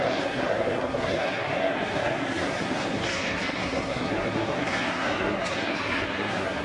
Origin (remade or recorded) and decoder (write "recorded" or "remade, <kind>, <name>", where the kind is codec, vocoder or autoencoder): remade, codec, SNAC